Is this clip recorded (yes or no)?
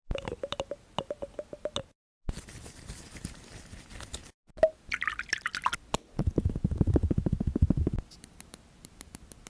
yes